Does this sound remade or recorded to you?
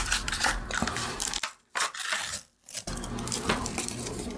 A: remade